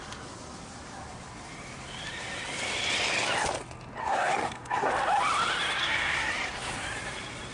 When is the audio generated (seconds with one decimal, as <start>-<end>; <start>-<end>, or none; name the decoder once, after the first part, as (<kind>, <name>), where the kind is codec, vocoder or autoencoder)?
4.0-4.9 (codec, SNAC); 5.8-6.3